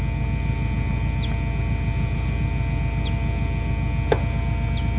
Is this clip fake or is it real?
real